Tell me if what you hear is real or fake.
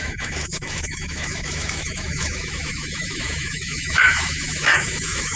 fake